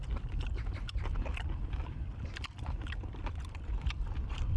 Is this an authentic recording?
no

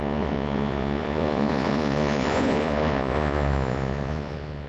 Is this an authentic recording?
no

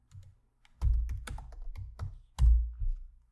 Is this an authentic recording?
yes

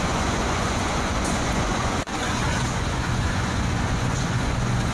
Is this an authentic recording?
no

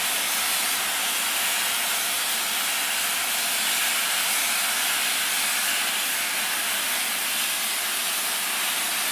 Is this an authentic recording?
yes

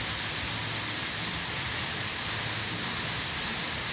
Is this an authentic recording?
yes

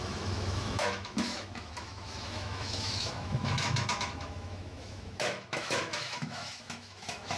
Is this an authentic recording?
no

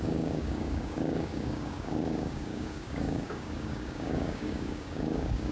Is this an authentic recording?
no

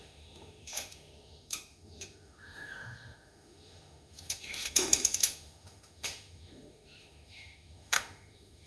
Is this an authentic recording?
no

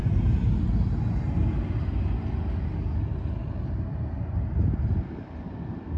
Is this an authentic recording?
yes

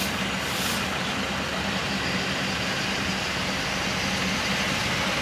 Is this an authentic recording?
yes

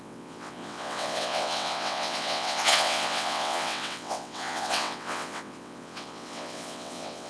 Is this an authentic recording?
no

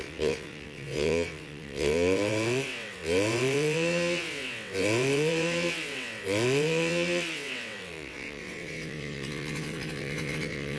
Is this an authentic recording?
no